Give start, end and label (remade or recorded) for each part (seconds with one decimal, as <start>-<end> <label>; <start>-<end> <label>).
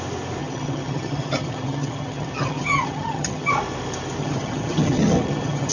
0.0-0.4 recorded; 0.4-3.5 remade; 3.5-4.2 recorded; 4.2-5.7 remade